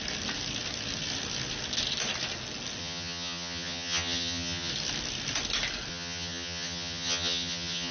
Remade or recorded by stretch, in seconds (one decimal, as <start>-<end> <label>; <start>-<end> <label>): 0.0-2.8 recorded; 2.8-4.7 remade; 4.7-5.9 recorded; 5.9-7.9 remade